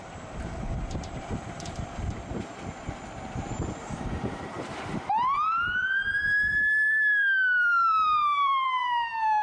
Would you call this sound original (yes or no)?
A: no